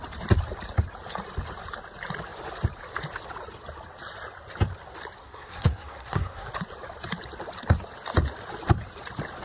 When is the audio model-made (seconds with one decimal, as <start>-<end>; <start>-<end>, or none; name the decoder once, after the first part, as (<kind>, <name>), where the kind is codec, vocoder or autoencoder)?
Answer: 5.2-6.5 (codec, SNAC)